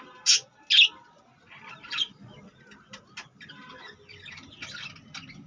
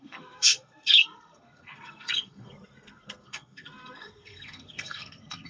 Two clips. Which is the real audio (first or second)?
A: first